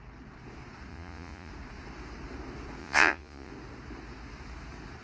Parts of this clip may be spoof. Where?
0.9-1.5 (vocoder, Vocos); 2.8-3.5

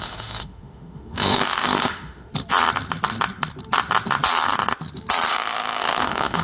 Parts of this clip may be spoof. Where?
0.0-2.3 (autoencoder, DAC-VAE); 5.3-6.4

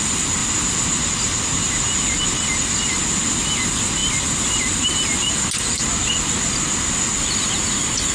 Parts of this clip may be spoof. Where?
none